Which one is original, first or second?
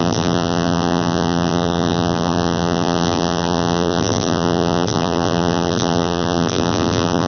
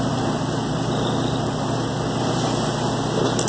second